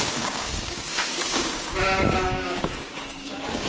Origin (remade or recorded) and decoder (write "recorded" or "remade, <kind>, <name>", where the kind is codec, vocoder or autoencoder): remade, codec, DAC